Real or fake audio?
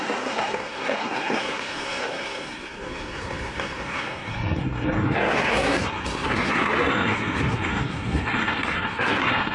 fake